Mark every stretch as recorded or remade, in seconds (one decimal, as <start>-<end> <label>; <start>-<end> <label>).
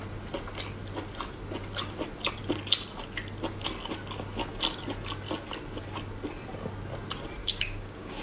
0.0-7.4 recorded; 7.4-8.2 remade